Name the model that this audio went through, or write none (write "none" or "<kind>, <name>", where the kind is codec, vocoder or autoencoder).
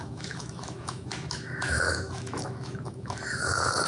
autoencoder, DAC-VAE